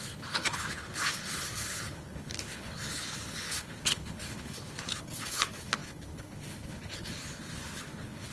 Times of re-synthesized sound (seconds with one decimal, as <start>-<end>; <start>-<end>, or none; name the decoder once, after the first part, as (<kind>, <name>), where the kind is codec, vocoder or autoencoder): 0.0-8.3 (codec, HILCodec)

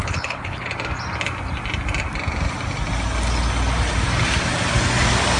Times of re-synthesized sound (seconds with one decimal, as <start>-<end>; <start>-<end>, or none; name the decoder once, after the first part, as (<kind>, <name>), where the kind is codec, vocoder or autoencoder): 0.0-0.7 (codec, HILCodec)